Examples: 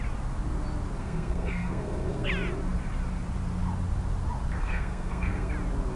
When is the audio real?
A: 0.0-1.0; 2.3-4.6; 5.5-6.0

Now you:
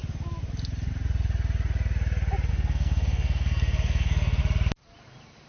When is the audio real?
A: 0.0-2.5; 4.4-5.5

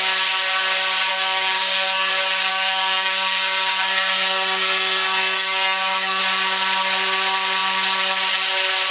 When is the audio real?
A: 0.0-1.1; 2.1-2.5; 6.2-8.9

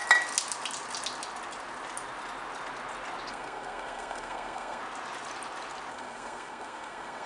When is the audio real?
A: 0.0-3.3; 4.8-5.9